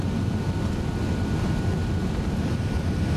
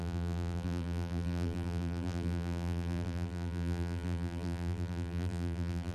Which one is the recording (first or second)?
first